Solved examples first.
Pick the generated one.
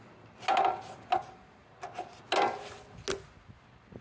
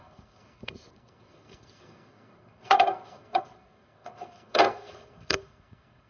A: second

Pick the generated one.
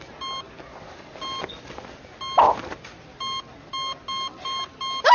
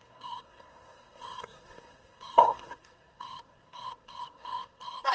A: second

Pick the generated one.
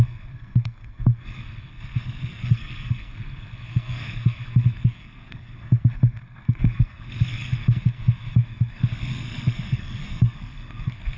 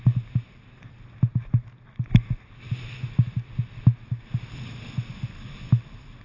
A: first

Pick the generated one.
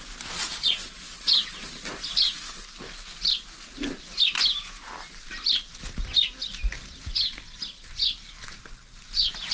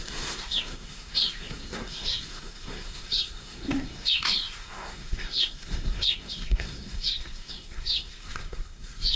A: second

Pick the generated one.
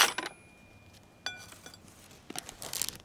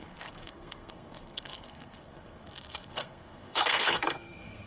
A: second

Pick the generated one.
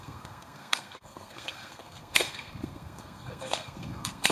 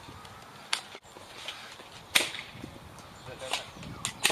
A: first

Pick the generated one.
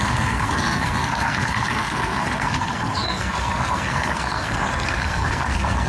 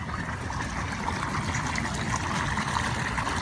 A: first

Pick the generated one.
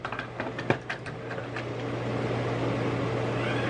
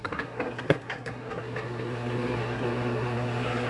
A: second